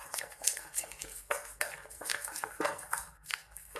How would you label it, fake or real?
fake